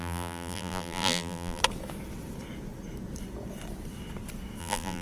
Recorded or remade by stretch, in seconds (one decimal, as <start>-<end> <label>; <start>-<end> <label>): 0.0-1.6 remade; 1.6-4.6 recorded; 4.6-5.0 remade